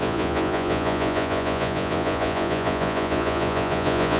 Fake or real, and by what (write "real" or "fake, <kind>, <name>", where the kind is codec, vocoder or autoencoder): fake, vocoder, Vocos